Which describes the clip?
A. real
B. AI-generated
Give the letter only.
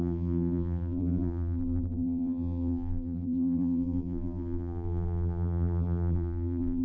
B